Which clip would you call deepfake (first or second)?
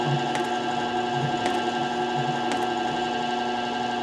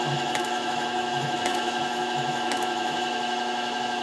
second